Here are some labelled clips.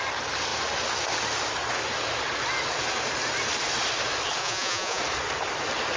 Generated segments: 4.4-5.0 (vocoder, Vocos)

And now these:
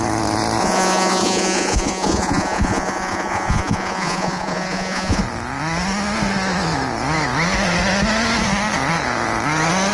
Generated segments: 0.6-5.2 (vocoder, Vocos)

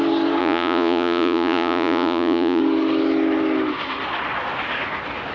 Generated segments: 0.4-2.6 (vocoder, Vocos)

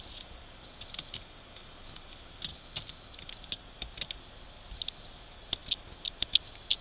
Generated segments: none